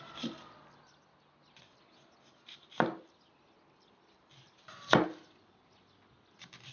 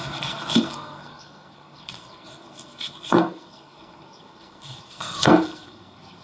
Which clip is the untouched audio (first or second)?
first